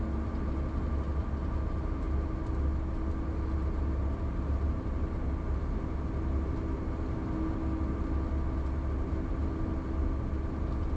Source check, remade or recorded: recorded